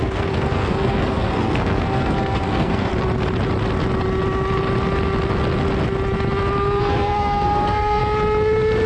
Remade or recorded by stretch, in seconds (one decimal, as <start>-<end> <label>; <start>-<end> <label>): 0.0-2.9 remade; 2.9-6.8 recorded; 6.8-8.0 remade; 8.0-8.9 recorded